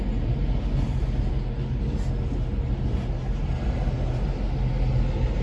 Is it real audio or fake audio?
real